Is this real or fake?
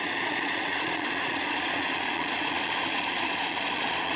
fake